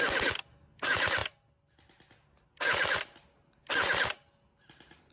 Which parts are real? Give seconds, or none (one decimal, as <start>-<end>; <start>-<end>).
0.0-5.1